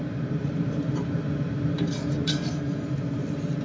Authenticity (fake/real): fake